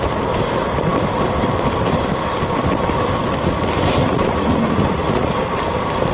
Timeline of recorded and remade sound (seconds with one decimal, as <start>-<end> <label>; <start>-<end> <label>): 0.0-4.0 recorded; 4.0-5.4 remade; 5.4-6.1 recorded